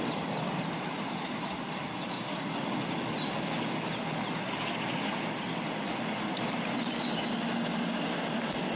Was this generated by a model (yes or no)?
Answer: no